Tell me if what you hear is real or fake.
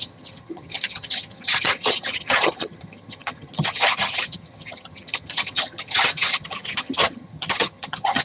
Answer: fake